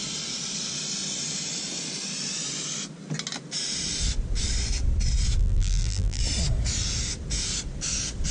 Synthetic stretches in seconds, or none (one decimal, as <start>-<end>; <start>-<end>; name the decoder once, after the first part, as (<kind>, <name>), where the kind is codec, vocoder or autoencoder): 5.4-6.2 (vocoder, BigVGAN v2)